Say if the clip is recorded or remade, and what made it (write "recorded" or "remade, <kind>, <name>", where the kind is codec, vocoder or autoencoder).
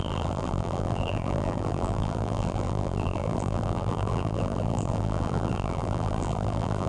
remade, vocoder, BigVGAN v2